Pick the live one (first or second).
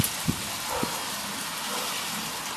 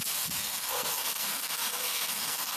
first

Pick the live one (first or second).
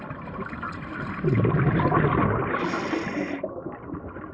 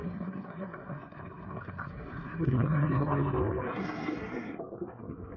first